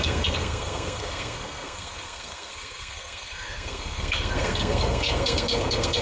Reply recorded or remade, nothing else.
remade